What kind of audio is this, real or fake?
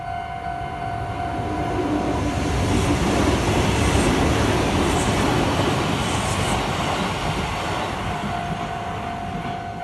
real